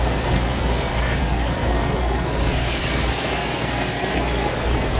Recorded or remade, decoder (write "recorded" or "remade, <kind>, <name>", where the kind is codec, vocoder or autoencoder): remade, codec, SNAC